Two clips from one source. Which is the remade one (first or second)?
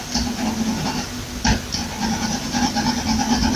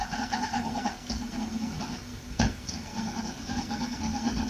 second